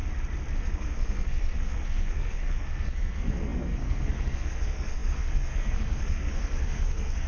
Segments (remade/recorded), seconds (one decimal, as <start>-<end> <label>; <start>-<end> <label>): 0.0-0.6 recorded; 0.6-7.3 remade